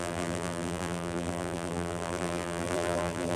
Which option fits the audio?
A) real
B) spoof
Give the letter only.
B